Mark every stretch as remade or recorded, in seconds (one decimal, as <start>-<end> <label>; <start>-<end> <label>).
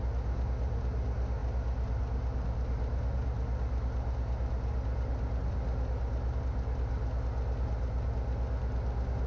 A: 0.0-9.3 recorded